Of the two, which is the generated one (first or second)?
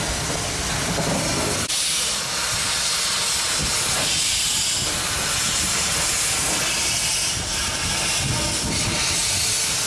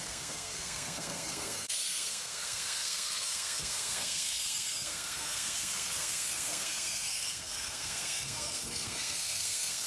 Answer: second